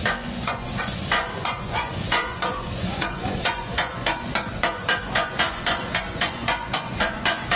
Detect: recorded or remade remade